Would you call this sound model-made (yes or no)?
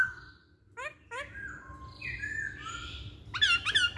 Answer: no